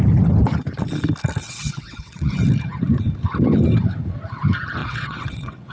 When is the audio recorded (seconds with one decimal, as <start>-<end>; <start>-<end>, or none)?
0.0-1.4; 2.4-4.8